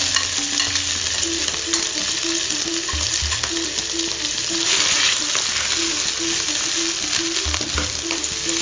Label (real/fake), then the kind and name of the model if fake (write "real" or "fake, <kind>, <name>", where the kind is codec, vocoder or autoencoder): real